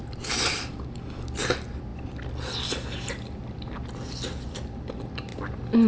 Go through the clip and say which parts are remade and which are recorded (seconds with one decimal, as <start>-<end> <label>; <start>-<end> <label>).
0.0-1.0 remade; 1.0-5.9 recorded